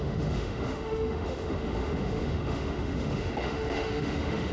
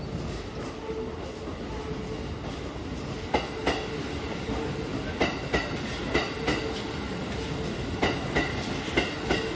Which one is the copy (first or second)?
first